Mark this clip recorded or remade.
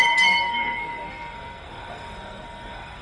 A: remade